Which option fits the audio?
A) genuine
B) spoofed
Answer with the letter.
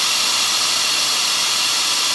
B